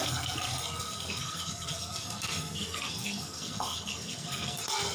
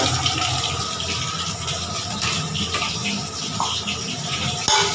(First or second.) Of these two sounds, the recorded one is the second